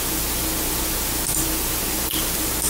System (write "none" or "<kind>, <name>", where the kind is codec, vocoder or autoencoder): none